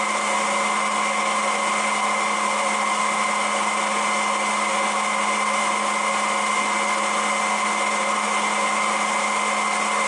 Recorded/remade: recorded